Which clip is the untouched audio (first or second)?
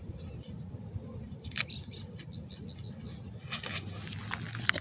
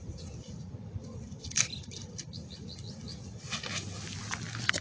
first